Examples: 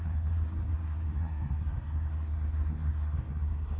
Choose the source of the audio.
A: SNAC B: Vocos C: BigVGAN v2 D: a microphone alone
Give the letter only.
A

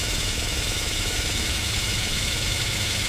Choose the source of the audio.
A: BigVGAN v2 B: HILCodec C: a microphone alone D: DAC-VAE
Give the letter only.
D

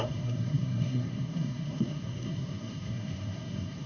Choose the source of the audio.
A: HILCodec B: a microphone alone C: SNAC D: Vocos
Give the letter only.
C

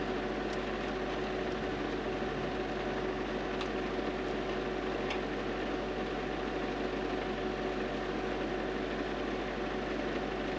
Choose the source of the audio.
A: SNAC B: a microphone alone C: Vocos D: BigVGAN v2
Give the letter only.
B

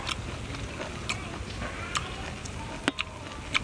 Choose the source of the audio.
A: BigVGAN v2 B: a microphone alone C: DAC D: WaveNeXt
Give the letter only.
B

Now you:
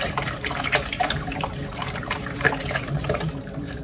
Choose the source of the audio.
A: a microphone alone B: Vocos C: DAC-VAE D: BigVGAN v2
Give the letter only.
D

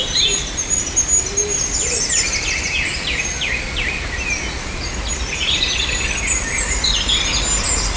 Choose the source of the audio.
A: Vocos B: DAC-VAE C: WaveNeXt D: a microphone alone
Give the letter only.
D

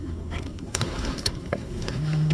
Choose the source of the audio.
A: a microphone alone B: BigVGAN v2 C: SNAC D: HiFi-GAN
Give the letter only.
C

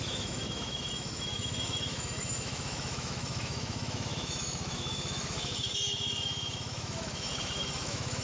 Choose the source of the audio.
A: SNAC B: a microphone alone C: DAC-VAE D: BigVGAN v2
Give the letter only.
C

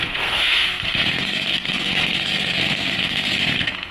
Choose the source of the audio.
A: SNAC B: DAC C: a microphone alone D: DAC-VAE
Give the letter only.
A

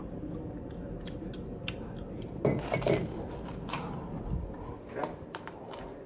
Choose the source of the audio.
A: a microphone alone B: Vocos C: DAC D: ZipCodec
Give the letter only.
A